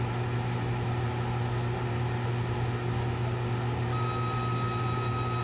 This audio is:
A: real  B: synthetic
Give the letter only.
A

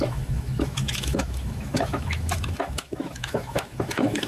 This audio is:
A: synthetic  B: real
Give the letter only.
A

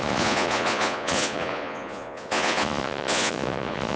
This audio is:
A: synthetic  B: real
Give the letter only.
A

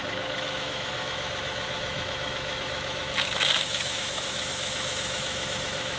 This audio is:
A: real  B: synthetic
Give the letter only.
B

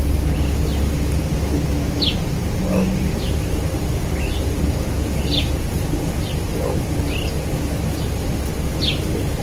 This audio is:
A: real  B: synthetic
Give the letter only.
A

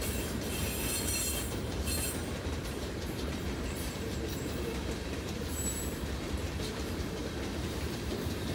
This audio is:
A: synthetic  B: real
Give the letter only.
A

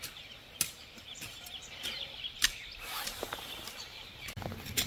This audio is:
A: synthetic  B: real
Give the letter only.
B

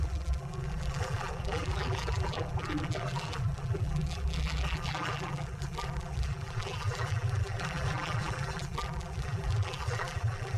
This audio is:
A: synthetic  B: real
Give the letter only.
A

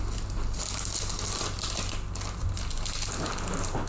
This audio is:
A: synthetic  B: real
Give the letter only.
B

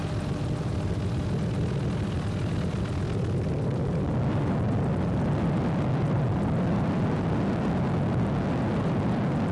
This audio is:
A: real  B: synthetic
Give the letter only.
A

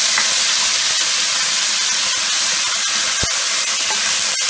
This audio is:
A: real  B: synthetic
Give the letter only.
A